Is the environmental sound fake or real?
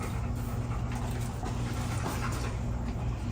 real